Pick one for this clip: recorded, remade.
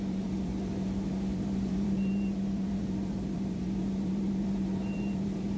remade